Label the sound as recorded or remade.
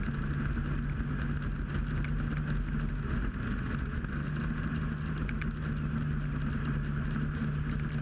recorded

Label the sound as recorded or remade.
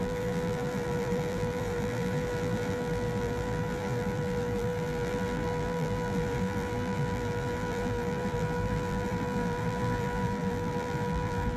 remade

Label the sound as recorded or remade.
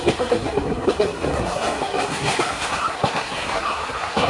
remade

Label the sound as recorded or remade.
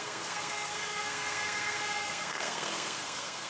remade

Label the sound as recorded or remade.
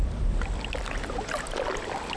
recorded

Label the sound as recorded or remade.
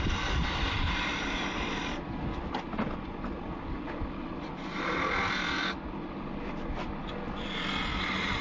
recorded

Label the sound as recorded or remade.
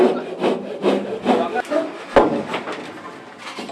recorded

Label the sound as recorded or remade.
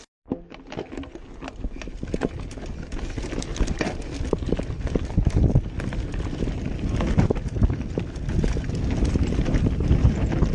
recorded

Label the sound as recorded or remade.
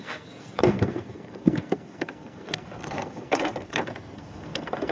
remade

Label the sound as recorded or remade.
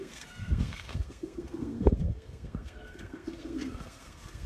remade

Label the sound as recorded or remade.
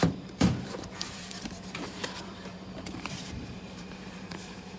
remade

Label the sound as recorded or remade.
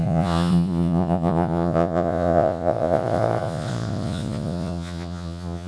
remade